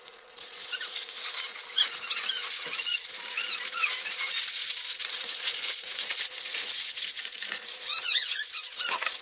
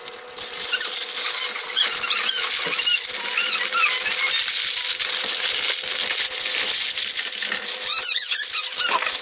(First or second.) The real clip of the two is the second